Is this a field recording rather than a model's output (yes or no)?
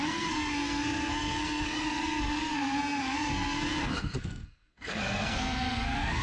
no